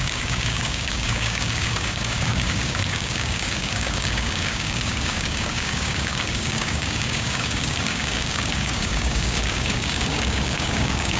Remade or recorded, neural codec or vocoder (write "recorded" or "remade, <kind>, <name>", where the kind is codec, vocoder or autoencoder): remade, codec, DAC